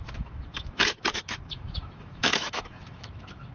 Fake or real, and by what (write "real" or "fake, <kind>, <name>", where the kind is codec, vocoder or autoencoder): fake, autoencoder, DAC-VAE